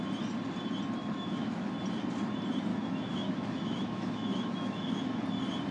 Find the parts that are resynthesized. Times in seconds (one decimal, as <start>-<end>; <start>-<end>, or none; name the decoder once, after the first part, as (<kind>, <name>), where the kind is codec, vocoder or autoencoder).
1.0-1.7 (autoencoder, DAC-VAE); 2.7-5.2